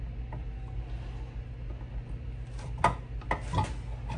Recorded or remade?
recorded